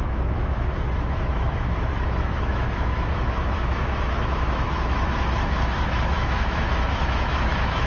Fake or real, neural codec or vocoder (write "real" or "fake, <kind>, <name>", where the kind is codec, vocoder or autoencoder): fake, autoencoder, DAC-VAE